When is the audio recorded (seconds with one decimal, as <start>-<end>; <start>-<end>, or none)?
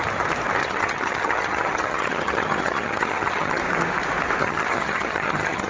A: 0.0-0.6; 3.6-4.4